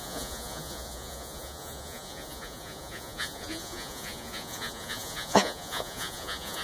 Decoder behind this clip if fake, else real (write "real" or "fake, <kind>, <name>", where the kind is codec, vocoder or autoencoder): fake, vocoder, Vocos